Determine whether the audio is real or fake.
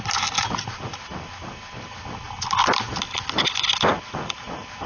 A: real